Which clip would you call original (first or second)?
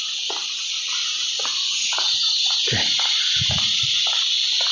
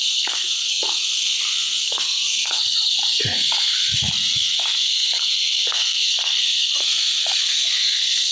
first